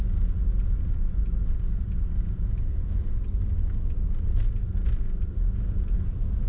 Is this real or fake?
real